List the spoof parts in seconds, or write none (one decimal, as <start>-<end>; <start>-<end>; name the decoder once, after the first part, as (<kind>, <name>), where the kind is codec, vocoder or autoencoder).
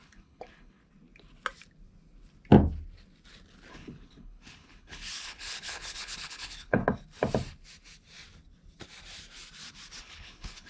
0.0-0.8 (codec, HILCodec); 3.7-6.8; 10.0-10.7